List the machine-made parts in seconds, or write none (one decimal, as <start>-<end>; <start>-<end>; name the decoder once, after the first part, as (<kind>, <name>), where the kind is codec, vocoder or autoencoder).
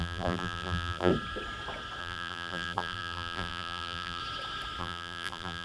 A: 0.0-1.1 (vocoder, BigVGAN v2); 2.0-4.2; 4.8-5.6